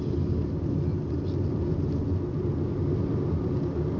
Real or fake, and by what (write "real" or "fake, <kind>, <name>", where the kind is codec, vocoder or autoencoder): real